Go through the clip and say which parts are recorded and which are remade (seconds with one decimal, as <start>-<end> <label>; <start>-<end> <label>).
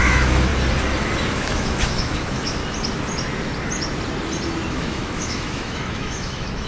0.0-0.5 remade; 0.5-1.3 recorded; 1.3-2.6 remade; 2.6-4.7 recorded; 4.7-6.7 remade